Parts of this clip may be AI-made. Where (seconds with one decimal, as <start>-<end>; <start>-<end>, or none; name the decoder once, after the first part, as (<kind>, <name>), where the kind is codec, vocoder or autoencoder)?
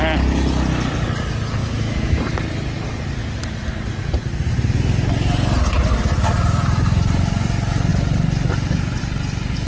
1.6-2.2 (autoencoder, DAC-VAE)